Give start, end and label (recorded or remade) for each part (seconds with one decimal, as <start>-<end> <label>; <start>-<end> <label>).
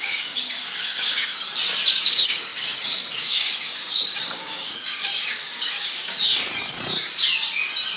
0.0-1.3 remade; 1.3-1.9 recorded; 1.9-6.3 remade; 6.3-8.0 recorded